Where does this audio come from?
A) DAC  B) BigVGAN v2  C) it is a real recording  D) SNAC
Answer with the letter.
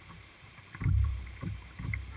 B